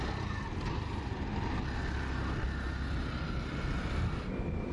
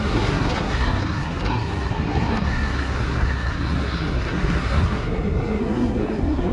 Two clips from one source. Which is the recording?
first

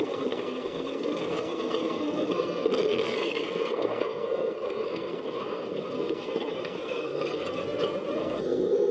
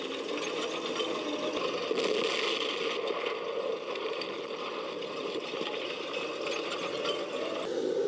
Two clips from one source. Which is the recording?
second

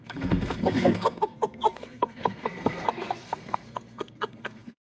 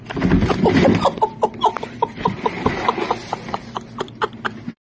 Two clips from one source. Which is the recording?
second